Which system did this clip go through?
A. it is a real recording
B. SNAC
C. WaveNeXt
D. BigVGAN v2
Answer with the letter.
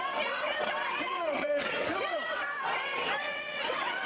C